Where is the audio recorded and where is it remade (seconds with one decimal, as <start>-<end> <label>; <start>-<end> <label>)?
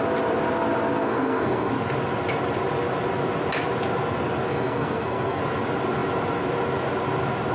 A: 0.0-1.0 recorded; 1.0-1.7 remade; 1.7-4.5 recorded; 4.5-5.4 remade; 5.4-7.5 recorded